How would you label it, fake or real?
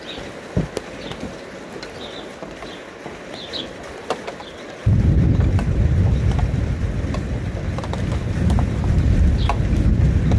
real